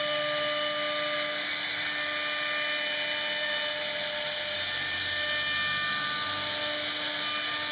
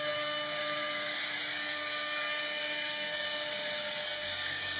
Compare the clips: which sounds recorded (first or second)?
first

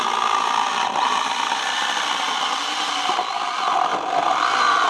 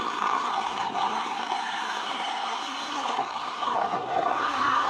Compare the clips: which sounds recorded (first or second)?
first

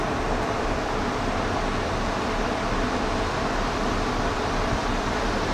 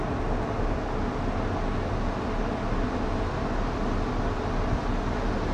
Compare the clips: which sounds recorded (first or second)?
second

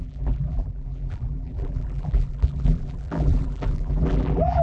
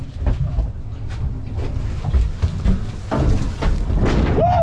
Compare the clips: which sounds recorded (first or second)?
second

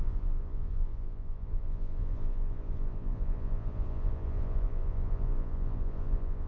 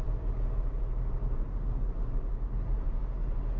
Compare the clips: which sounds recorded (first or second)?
second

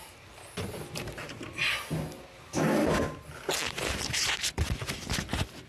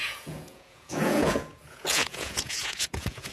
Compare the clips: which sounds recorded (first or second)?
first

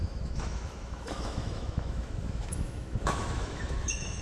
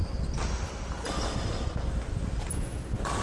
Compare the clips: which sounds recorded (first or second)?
second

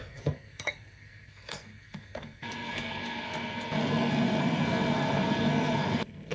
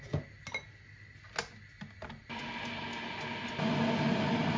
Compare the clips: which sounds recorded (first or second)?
second